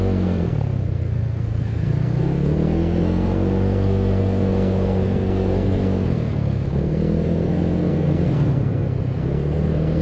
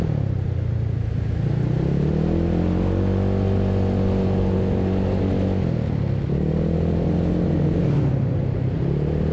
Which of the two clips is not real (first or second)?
first